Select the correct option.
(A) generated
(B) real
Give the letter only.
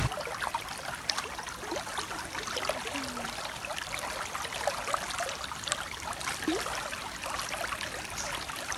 B